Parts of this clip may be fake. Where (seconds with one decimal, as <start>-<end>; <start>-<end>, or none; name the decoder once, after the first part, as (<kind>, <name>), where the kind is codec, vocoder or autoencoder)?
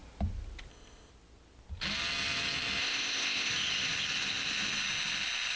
0.7-1.1 (codec, ZipCodec); 2.8-3.5